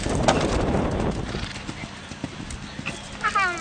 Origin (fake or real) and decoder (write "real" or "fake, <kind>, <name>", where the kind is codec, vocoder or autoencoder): real